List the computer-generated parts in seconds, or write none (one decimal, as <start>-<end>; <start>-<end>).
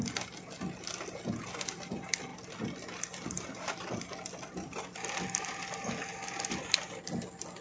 none